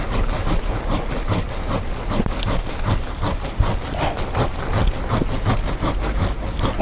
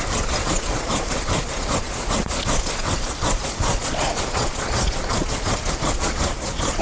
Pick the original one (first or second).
first